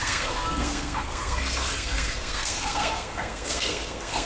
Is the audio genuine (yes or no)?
no